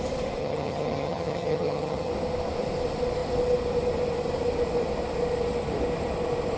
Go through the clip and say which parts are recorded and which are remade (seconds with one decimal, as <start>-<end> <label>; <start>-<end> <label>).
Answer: 0.0-0.4 recorded; 0.4-2.1 remade; 2.1-6.6 recorded